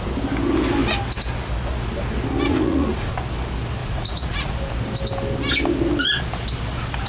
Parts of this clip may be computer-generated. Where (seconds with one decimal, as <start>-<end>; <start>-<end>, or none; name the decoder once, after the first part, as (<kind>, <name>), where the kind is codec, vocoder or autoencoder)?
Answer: 2.5-3.1 (vocoder, Vocos); 3.8-4.5